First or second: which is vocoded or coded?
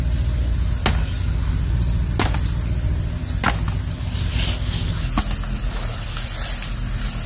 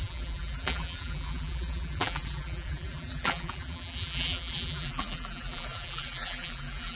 second